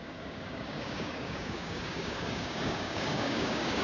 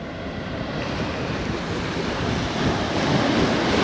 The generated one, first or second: first